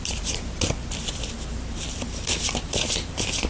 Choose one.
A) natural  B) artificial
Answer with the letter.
B